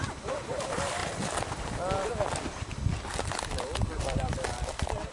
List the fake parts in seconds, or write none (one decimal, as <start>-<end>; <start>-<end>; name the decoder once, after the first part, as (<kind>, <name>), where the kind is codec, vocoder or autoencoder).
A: 0.0-1.0 (vocoder, BigVGAN v2); 4.0-5.1